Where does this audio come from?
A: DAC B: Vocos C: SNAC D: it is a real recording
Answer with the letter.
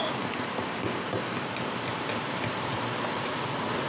D